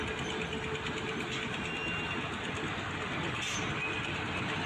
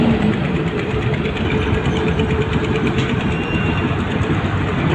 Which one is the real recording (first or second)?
first